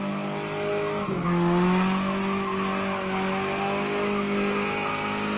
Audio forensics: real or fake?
real